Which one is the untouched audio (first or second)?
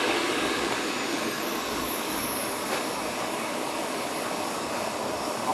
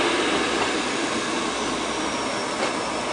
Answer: second